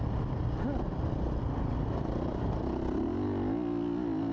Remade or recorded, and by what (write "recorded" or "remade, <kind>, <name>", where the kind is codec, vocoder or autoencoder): recorded